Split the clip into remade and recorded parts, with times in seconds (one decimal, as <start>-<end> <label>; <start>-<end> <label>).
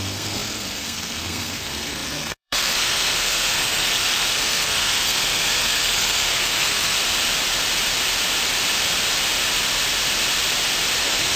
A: 0.0-7.0 remade; 7.0-11.0 recorded; 11.0-11.4 remade